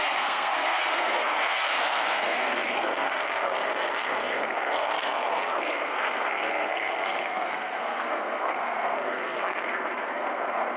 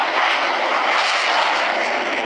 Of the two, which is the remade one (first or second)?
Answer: first